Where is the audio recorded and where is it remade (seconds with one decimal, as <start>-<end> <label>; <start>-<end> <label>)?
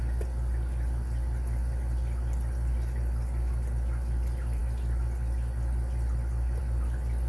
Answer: 0.0-7.3 recorded